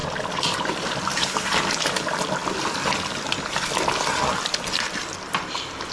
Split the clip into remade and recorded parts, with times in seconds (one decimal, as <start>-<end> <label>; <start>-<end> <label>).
0.0-5.9 recorded